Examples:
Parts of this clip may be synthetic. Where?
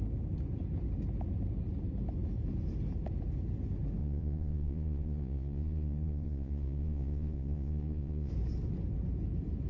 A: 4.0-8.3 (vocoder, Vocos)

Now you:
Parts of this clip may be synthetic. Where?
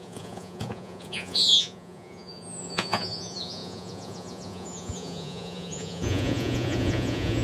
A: 0.0-7.4 (vocoder, Vocos)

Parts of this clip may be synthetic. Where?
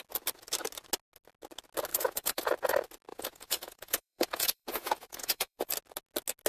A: 1.9-2.5 (vocoder, Vocos); 3.1-5.7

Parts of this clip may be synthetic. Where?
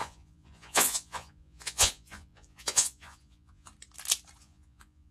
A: 0.0-3.7 (vocoder, Vocos); 4.4-5.1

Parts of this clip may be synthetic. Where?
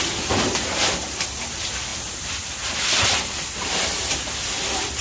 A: none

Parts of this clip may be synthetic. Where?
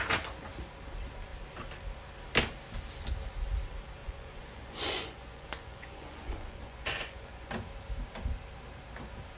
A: 4.0-7.5 (vocoder, Vocos)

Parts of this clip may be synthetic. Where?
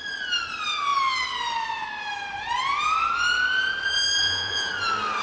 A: 4.2-4.7 (vocoder, Vocos)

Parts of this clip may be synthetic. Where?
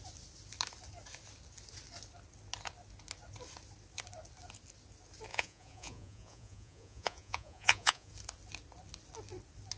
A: 5.3-8.1 (vocoder, Vocos)